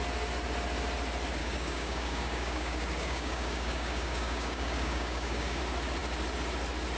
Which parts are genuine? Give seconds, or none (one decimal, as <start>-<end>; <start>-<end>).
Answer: 0.0-1.4; 5.6-7.0

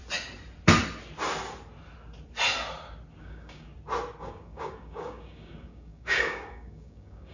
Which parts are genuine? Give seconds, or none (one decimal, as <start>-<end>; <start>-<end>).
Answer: 0.0-3.2; 3.7-4.2

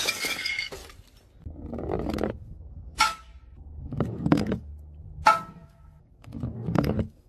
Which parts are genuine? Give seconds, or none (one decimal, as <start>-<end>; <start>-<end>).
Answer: 0.8-2.3; 3.3-3.8; 4.7-5.5